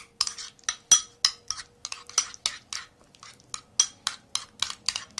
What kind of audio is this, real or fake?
real